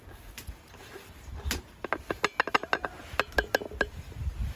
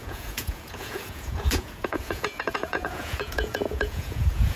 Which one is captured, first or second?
first